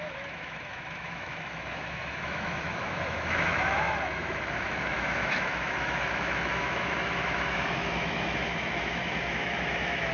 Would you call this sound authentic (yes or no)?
no